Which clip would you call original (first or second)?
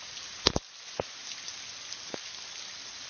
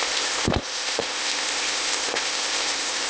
first